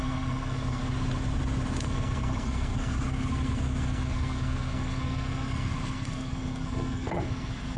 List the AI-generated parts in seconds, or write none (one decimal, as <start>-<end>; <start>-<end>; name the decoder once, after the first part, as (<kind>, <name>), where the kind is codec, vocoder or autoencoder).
0.0-0.8 (codec, SNAC); 1.8-7.8